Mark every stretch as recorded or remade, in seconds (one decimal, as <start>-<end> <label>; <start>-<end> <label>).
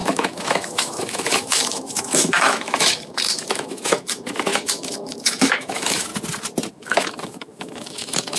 0.0-6.1 remade; 6.1-6.7 recorded; 6.7-8.4 remade